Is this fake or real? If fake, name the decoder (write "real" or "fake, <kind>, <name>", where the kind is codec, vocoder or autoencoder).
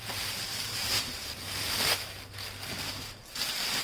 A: real